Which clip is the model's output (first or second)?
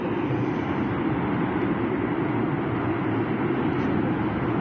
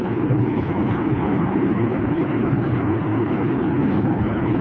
second